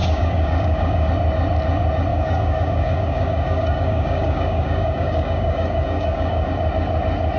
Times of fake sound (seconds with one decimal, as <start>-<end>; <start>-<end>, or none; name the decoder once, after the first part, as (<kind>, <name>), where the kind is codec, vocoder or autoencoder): 0.0-1.1 (codec, DAC); 2.1-6.5